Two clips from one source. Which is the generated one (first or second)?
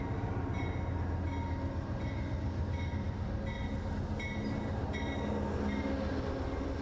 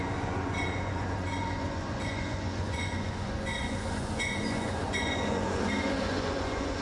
second